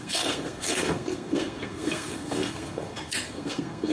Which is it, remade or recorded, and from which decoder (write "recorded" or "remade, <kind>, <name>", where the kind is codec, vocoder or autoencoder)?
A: remade, codec, SNAC